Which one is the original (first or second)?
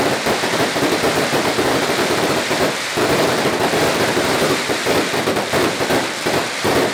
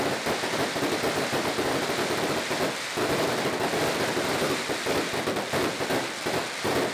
second